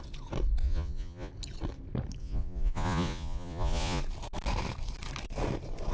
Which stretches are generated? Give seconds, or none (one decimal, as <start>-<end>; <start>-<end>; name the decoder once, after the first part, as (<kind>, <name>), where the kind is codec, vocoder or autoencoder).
0.6-1.3 (vocoder, Vocos); 2.2-4.0